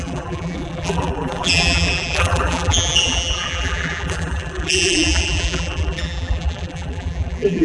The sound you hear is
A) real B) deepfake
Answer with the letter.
B